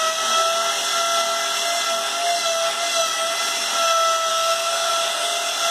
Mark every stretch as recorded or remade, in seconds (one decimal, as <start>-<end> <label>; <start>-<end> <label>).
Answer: 0.0-4.3 recorded; 4.3-4.9 remade; 4.9-5.7 recorded